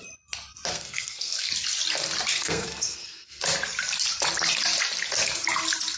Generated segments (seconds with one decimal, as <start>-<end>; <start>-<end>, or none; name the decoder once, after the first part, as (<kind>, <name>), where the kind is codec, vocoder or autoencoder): 0.7-1.5 (codec, SNAC); 2.3-3.4